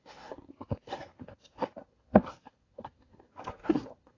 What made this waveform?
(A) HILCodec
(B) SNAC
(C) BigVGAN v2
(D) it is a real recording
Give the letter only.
B